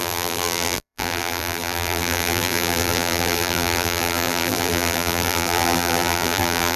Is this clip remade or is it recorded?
remade